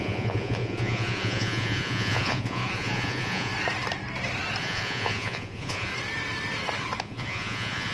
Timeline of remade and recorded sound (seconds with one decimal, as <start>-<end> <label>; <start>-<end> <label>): 0.0-3.5 remade; 3.5-4.6 recorded; 4.6-5.9 remade; 5.9-7.0 recorded; 7.0-7.9 remade

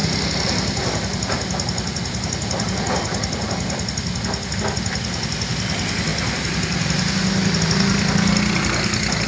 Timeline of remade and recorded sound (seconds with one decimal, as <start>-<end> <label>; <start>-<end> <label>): 0.0-9.3 recorded

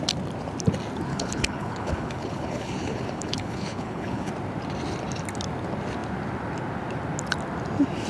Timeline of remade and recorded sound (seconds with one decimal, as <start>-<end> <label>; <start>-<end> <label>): 0.0-1.1 recorded; 1.1-4.3 remade; 4.3-8.1 recorded

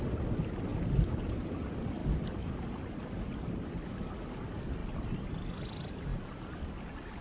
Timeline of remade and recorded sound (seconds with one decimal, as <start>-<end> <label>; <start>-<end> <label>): 0.0-7.2 recorded